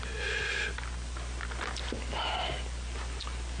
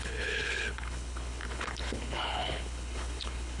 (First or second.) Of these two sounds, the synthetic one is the second